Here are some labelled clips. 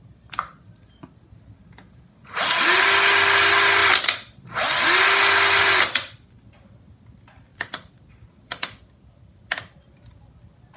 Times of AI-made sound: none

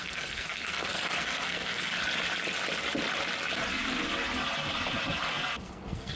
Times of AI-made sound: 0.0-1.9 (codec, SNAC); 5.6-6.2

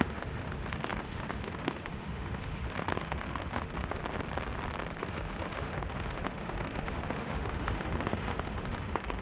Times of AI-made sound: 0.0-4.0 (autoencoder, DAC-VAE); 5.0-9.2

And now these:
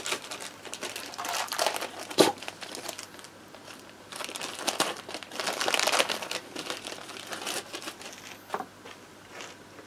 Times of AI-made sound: 0.0-7.1 (vocoder, BigVGAN v2); 9.1-9.9

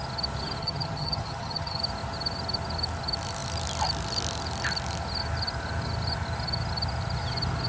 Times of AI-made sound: 0.6-1.8 (vocoder, HiFi-GAN)